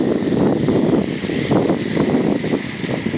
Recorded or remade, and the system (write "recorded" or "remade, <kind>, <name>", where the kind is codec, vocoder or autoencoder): recorded